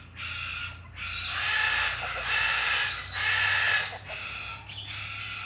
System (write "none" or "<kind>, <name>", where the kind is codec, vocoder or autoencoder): none